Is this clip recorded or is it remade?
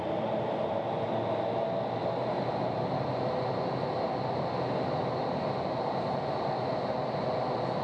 recorded